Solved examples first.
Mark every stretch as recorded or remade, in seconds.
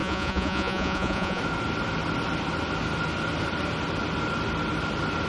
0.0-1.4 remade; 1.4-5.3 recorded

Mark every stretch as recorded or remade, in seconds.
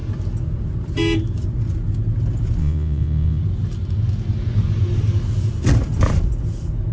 0.0-2.6 recorded; 2.6-3.4 remade; 3.4-6.9 recorded